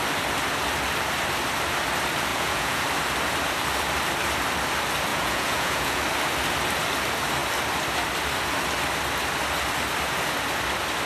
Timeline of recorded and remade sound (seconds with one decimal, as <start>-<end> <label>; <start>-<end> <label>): 0.0-2.3 recorded; 2.3-2.8 remade; 2.8-5.1 recorded; 5.1-6.0 remade; 6.0-11.1 recorded